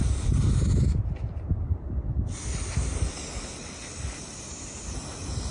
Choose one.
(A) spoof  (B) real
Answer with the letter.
B